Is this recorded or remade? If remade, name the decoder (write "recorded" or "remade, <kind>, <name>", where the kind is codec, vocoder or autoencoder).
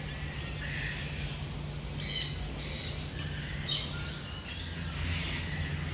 recorded